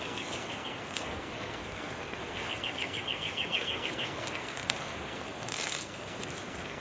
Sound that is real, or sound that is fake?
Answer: fake